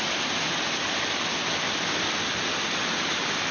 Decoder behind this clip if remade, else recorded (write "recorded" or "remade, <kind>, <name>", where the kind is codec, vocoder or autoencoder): recorded